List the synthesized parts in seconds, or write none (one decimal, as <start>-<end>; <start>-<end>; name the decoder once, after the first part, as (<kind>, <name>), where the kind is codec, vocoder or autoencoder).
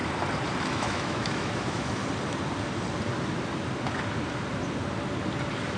0.7-2.0 (autoencoder, DAC-VAE)